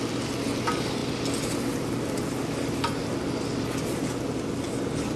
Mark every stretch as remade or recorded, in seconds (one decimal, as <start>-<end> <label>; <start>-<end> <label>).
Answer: 0.0-5.2 recorded